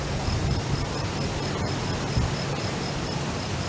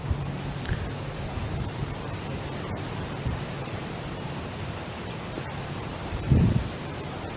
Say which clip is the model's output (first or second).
second